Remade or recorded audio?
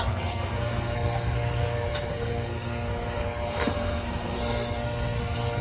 remade